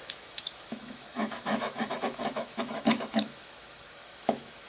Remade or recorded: remade